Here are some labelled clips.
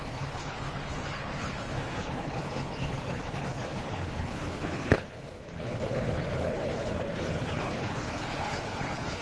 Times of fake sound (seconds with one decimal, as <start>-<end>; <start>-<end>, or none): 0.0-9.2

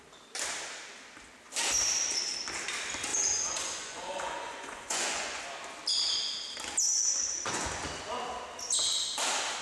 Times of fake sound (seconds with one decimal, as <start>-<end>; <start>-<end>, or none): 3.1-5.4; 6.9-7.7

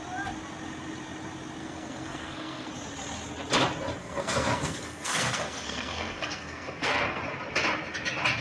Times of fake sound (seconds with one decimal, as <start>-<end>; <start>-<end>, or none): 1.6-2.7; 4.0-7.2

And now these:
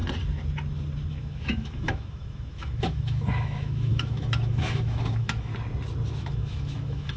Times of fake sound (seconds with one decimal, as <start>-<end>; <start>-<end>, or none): 1.1-5.5; 6.2-7.2

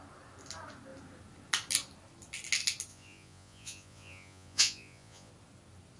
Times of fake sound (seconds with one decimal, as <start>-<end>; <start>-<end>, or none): 2.9-5.3

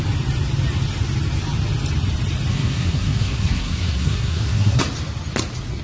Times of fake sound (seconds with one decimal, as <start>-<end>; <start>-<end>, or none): 2.5-4.8

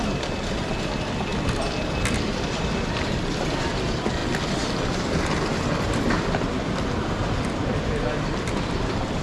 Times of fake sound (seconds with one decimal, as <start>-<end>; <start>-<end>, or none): none